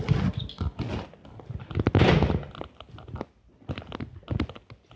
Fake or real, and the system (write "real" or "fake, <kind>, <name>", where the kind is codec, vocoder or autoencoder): real